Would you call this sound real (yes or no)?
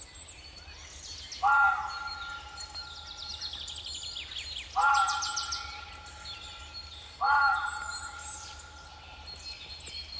yes